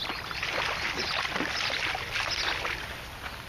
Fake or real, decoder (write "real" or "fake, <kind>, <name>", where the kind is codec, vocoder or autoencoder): real